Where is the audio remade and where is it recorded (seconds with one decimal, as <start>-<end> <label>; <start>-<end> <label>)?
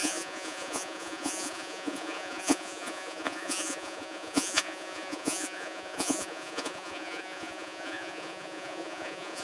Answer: 0.0-9.4 remade